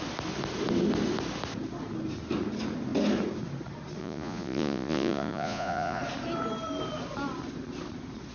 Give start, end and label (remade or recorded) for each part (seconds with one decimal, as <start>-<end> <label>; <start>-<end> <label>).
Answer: 0.0-4.0 recorded; 4.0-6.0 remade; 6.0-8.3 recorded